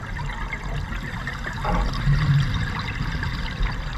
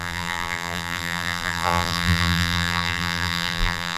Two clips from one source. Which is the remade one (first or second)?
second